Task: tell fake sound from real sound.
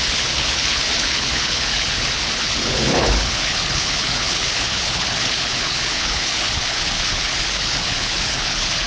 fake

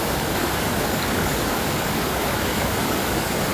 fake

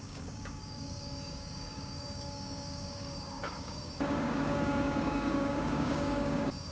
fake